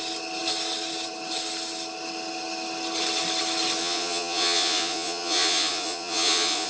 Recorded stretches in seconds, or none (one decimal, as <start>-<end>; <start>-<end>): 0.0-3.8